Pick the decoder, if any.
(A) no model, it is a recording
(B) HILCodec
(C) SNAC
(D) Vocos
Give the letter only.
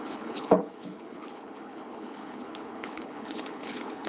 B